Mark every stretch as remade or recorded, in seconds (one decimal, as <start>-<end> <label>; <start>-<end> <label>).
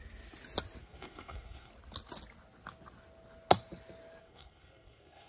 0.0-0.8 recorded; 0.8-1.7 remade; 1.7-4.2 recorded; 4.2-5.3 remade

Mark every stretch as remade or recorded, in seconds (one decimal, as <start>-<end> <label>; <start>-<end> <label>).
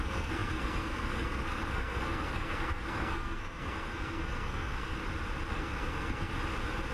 0.0-5.0 remade; 5.0-5.5 recorded; 5.5-6.3 remade; 6.3-6.9 recorded